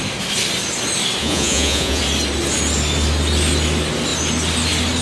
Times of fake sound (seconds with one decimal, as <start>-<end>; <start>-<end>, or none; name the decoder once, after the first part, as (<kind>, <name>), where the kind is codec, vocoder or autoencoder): 1.2-2.0 (vocoder, Vocos)